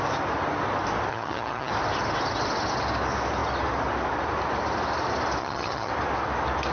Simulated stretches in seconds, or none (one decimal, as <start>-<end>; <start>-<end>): 1.1-1.7; 5.4-5.9